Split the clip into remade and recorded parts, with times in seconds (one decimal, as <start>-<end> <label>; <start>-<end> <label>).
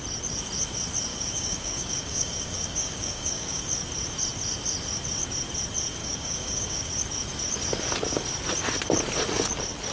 0.0-1.1 recorded; 1.1-3.6 remade; 3.6-6.0 recorded; 6.0-6.9 remade; 6.9-9.9 recorded